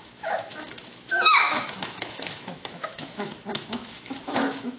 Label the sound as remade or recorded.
remade